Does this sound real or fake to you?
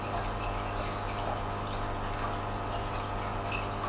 real